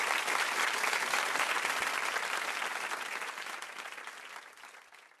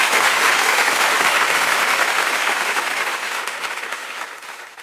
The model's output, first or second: second